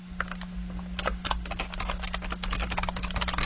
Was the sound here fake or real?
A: real